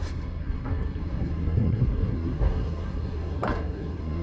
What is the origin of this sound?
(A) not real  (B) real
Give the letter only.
A